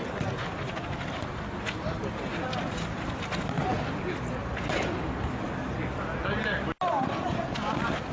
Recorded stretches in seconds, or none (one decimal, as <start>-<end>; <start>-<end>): 0.0-8.1